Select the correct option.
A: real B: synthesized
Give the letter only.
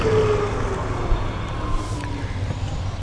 A